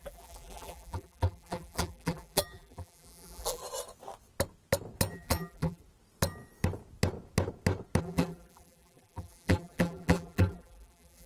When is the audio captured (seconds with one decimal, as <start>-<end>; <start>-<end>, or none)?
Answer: 3.6-5.1; 5.8-8.0